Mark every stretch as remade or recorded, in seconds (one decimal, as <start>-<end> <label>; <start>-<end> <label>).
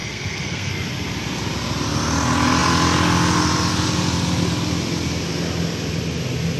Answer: 0.0-0.7 remade; 0.7-6.6 recorded